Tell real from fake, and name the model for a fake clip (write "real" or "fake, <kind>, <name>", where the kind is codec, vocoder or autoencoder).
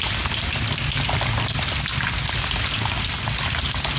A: real